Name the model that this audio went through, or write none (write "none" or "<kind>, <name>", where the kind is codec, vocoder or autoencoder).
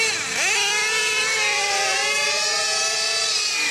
none